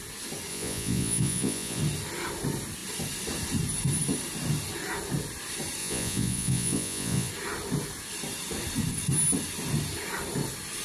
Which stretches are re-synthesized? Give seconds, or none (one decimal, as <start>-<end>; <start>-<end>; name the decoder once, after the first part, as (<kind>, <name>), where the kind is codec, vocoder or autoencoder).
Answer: 0.5-1.8 (vocoder, Vocos); 5.8-7.3